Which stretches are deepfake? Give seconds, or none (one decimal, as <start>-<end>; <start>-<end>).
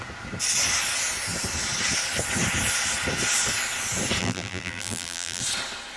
4.2-5.4